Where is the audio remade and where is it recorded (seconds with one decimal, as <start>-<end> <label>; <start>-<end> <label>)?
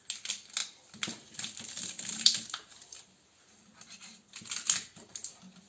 0.0-0.6 recorded; 0.6-3.0 remade; 3.0-5.7 recorded